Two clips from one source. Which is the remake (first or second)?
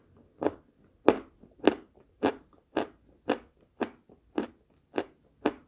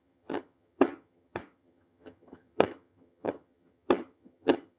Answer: second